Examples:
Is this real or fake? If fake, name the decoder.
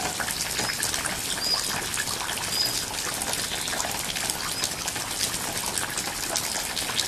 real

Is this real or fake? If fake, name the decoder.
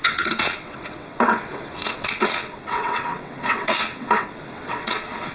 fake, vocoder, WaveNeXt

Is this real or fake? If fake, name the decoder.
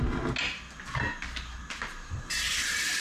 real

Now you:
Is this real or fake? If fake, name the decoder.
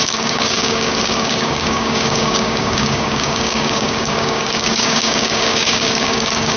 fake, codec, DAC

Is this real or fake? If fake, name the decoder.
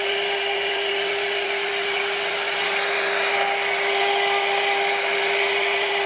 real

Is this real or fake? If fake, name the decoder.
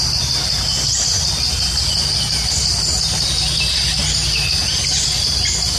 real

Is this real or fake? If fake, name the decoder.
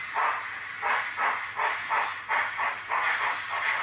real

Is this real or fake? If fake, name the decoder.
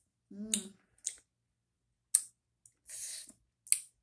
real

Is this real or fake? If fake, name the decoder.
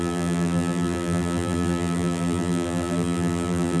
fake, vocoder, BigVGAN v2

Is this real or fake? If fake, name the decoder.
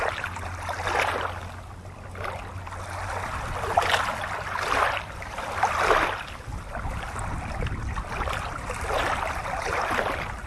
real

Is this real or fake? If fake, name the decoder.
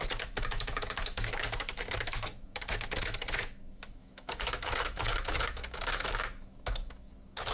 fake, autoencoder, DAC-VAE